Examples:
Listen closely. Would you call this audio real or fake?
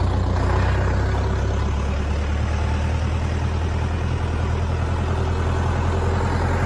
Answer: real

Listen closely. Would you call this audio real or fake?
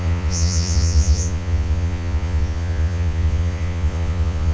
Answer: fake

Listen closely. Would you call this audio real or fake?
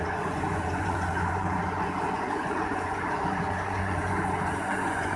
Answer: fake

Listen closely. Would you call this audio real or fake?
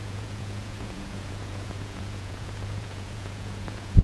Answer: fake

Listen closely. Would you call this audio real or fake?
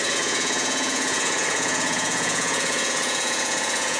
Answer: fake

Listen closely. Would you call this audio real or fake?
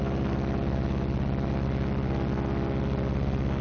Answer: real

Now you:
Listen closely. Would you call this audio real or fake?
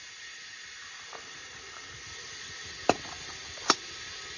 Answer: real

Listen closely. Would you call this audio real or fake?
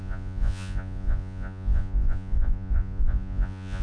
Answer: fake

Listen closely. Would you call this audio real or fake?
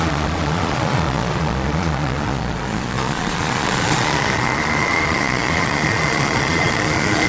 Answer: fake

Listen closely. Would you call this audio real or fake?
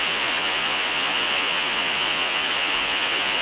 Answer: fake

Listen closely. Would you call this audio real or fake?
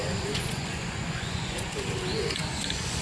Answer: fake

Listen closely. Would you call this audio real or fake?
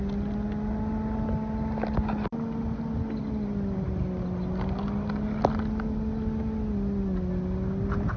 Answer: real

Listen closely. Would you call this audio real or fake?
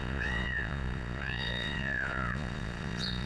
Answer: fake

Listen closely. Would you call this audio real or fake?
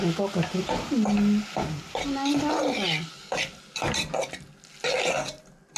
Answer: real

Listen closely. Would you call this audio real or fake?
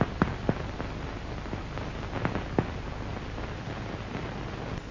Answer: real